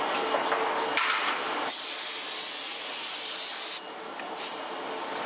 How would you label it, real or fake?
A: real